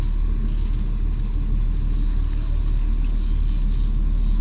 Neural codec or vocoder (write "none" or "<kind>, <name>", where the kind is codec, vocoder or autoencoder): none